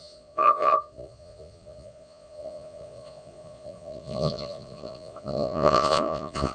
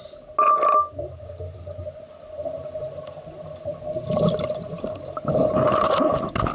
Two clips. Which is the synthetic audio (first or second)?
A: first